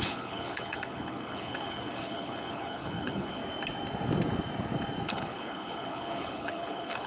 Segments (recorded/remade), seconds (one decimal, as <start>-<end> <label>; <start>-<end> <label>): 0.0-3.4 remade; 3.4-5.1 recorded; 5.1-7.1 remade